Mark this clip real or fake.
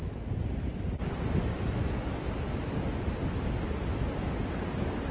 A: real